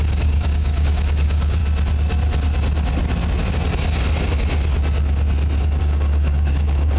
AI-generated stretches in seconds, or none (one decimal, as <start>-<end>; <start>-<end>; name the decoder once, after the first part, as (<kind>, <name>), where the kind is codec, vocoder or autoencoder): 0.0-1.6 (codec, DAC); 5.8-7.0